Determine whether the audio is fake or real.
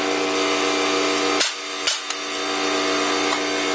real